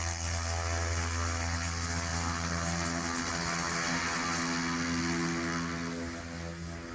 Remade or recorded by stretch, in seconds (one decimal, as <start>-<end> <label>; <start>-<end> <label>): 0.0-6.9 recorded